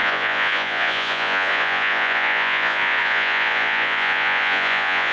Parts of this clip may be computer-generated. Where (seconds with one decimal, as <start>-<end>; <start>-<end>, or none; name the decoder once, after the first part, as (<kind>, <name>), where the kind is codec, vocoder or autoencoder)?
0.0-5.1 (vocoder, Vocos)